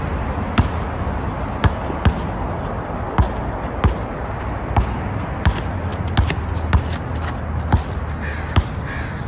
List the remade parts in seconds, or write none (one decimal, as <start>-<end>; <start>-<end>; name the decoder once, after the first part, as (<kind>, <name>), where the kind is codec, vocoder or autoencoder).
none

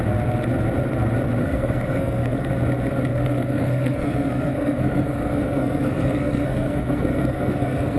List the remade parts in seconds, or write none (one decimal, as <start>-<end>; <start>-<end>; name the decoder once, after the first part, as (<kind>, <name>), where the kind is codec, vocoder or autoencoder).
1.4-2.5 (codec, SNAC); 3.1-8.0

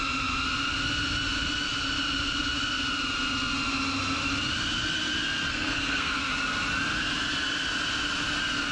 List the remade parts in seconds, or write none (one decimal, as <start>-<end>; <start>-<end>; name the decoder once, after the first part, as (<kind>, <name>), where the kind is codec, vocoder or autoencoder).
5.5-6.3 (codec, SNAC)

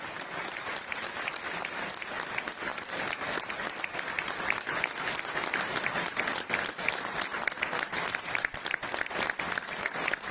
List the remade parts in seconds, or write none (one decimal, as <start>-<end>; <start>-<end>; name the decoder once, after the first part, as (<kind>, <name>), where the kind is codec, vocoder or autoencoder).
none

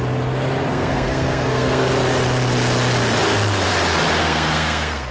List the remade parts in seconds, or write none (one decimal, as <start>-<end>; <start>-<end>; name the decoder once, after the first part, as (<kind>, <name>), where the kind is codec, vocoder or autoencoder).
0.7-1.9 (codec, SNAC); 4.2-5.1